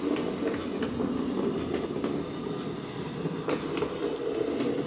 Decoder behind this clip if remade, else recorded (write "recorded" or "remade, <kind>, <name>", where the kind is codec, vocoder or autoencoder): recorded